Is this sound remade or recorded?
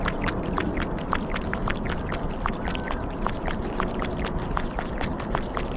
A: recorded